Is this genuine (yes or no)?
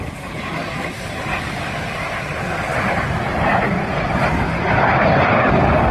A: yes